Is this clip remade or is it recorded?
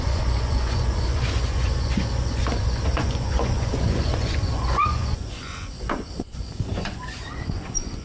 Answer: remade